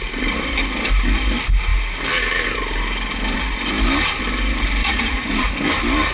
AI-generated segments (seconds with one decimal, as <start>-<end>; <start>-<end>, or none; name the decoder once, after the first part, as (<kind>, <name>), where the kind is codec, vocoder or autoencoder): 4.8-5.5 (vocoder, Vocos)